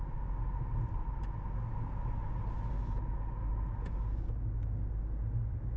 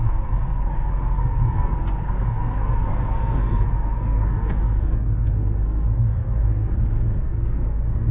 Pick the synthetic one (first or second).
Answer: second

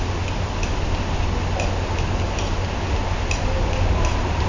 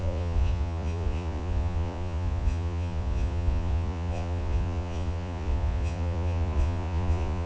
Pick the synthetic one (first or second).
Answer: second